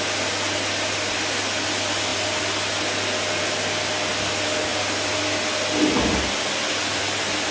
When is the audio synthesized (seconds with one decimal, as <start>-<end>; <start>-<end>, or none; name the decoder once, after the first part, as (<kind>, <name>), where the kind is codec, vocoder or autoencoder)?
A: none